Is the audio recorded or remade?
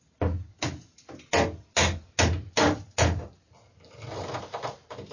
recorded